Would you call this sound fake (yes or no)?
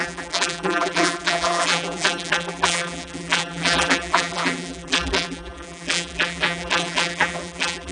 yes